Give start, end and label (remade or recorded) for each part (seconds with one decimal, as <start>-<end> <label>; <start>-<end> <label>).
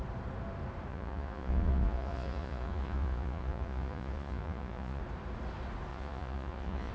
0.0-0.9 recorded; 0.9-5.0 remade; 5.0-5.9 recorded; 5.9-6.9 remade